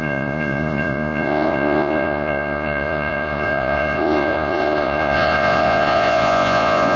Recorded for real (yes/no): no